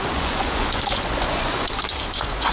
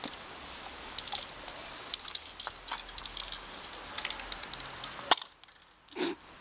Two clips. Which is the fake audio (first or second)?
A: first